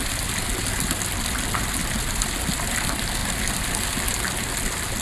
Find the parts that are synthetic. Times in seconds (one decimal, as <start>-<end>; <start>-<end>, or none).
none